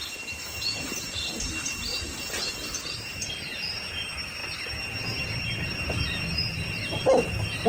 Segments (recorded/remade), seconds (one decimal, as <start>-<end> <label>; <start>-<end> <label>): 0.0-1.9 recorded; 1.9-2.5 remade; 2.5-3.5 recorded; 3.5-4.0 remade; 4.0-7.7 recorded